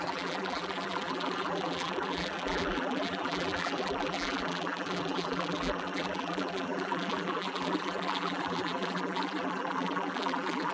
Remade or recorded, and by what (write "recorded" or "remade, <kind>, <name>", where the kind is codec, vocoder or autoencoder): remade, vocoder, BigVGAN v2